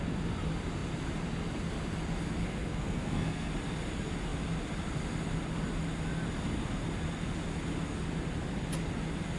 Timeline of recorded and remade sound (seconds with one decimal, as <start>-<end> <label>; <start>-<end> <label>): 0.0-2.4 recorded; 2.4-3.5 remade; 3.5-9.4 recorded